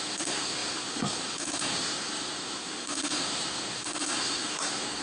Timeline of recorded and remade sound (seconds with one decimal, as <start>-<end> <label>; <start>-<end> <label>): 0.0-5.0 remade